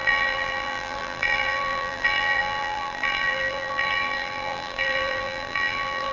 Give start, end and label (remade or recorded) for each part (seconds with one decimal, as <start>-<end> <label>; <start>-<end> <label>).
0.0-6.1 remade